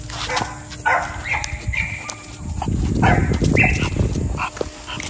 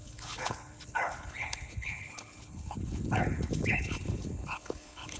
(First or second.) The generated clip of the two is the second